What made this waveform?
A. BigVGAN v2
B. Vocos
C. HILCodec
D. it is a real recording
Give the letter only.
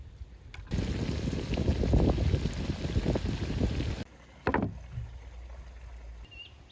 D